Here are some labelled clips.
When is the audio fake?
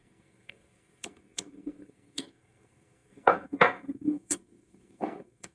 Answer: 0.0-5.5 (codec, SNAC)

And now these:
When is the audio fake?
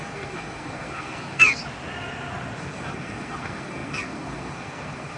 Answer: 0.0-1.6 (codec, SNAC); 2.6-5.2